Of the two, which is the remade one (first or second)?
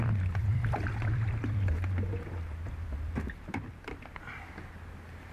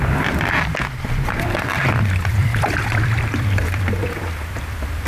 second